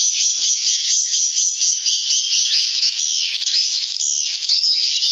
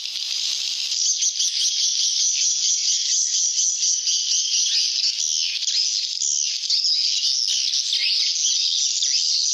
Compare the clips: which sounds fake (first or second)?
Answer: first